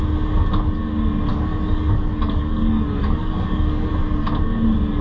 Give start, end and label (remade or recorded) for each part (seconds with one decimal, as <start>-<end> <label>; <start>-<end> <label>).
0.0-1.3 recorded; 1.3-3.9 remade; 3.9-5.0 recorded